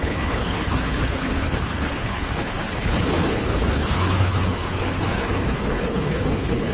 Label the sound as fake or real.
fake